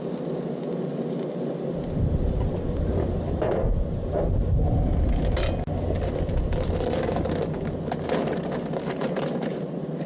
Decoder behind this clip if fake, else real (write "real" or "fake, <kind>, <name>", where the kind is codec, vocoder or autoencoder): real